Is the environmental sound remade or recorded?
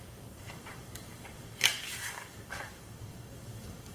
remade